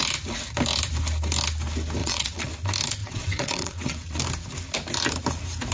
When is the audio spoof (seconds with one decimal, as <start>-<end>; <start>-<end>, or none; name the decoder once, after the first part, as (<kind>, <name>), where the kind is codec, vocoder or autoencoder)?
2.0-2.5 (vocoder, WaveNeXt); 3.0-4.2